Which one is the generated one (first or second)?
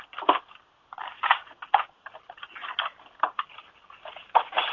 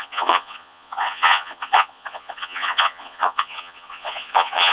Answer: second